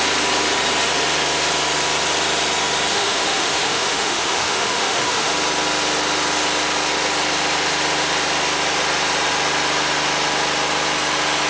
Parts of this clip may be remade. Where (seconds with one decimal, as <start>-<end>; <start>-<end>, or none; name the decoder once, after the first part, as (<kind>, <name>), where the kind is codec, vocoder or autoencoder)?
2.9-5.3 (autoencoder, DAC-VAE)